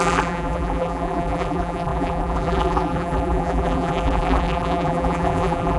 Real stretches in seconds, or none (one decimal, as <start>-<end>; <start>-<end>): none